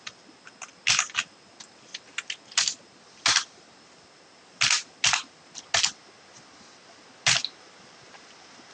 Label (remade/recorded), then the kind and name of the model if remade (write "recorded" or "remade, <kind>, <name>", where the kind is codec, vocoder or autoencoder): recorded